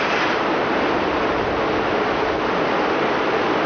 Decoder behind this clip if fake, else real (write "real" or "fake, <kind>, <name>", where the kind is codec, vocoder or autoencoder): real